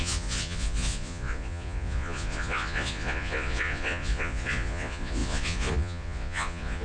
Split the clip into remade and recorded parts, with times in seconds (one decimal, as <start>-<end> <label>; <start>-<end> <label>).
0.0-6.8 remade